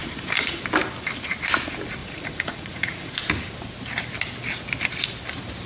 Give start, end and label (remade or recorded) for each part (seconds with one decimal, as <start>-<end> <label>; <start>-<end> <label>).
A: 0.0-0.6 remade; 0.6-2.0 recorded; 2.0-3.1 remade; 3.1-5.7 recorded